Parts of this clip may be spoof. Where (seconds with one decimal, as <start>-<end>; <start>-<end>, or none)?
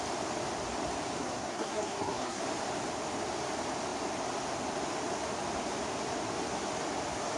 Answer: 1.2-2.4